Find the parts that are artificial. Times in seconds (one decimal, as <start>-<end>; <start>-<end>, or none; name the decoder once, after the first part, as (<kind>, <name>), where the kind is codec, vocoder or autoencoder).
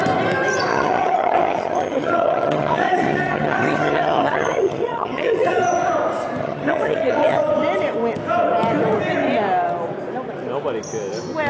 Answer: 0.7-5.6 (vocoder, HiFi-GAN); 6.4-7.5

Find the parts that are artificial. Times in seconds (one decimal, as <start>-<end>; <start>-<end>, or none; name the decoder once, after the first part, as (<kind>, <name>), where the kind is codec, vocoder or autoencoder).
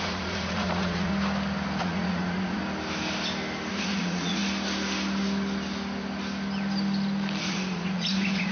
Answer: 0.0-1.1 (vocoder, Vocos); 1.8-2.6; 3.7-4.4; 7.4-8.5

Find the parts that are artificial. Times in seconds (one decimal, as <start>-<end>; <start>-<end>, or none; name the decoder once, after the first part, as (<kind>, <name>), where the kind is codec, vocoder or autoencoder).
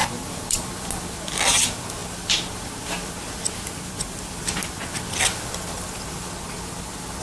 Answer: 0.0-0.9 (vocoder, BigVGAN v2); 2.0-6.3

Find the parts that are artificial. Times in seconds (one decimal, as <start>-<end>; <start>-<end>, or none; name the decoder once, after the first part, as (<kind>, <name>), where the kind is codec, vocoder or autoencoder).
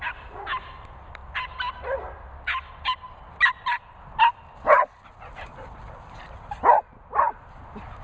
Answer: none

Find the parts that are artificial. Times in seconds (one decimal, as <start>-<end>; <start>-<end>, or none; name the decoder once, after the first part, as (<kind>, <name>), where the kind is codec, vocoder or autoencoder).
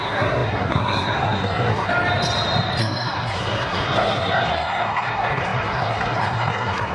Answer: 0.0-1.9 (codec, SNAC); 2.8-6.9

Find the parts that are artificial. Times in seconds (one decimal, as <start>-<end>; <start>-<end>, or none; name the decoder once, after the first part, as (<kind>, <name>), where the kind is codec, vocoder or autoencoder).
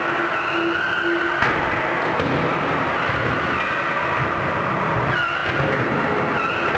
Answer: none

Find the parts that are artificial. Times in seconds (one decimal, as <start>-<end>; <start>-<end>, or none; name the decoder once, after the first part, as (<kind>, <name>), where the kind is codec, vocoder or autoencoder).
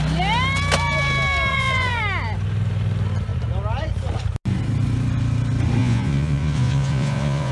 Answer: 1.5-2.0 (vocoder, Vocos); 5.8-7.5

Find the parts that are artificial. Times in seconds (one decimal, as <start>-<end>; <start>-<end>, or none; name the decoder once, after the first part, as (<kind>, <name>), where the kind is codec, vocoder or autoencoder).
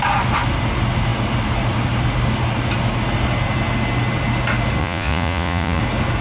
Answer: 4.8-5.8 (vocoder, Vocos)